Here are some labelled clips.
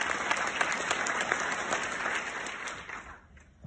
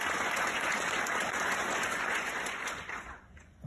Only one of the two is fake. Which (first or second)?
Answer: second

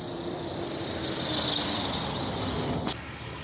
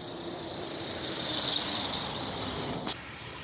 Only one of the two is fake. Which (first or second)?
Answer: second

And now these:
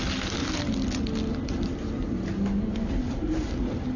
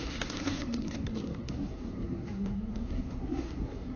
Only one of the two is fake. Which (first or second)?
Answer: second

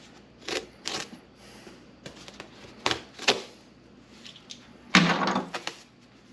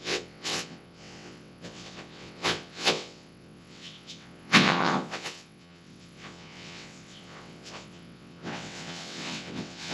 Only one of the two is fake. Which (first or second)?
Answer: second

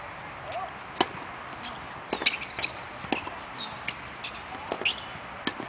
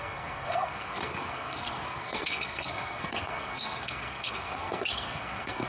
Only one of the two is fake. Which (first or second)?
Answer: second